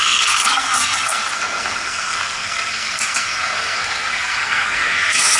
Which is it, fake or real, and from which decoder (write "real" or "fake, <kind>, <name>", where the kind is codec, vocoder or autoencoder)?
fake, codec, SNAC